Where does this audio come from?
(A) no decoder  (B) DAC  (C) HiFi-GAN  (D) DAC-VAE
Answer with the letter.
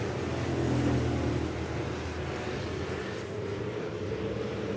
A